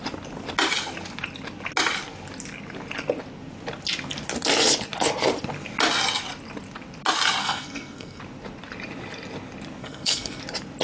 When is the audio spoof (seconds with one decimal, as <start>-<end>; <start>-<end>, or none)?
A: 7.4-8.2; 9.8-10.4